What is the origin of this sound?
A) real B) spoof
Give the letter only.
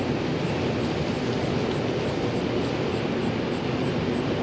A